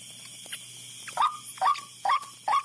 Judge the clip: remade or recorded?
recorded